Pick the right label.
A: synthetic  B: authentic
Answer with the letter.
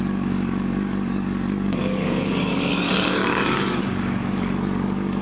A